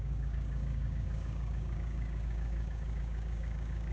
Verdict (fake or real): fake